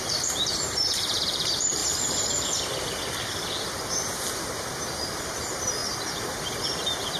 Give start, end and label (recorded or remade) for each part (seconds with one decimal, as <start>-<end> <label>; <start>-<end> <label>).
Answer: 0.0-1.8 remade; 1.8-5.3 recorded; 5.3-7.2 remade